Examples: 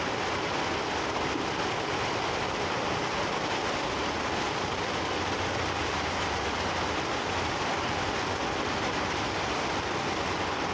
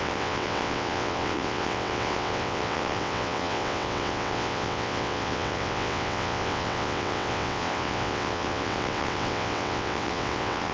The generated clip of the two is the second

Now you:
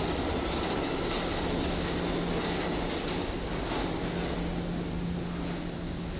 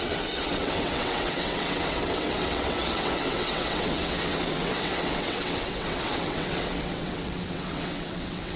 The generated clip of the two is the second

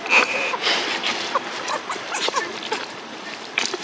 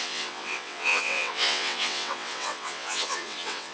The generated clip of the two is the second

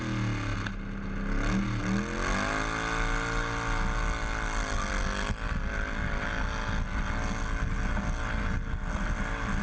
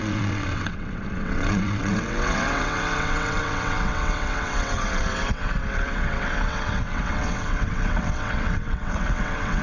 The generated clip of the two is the second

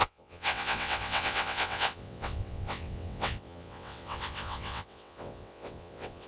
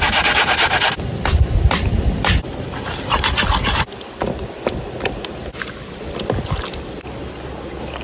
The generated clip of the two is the first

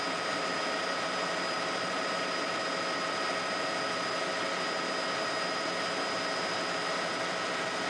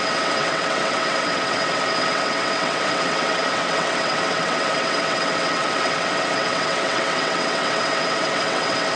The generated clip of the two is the second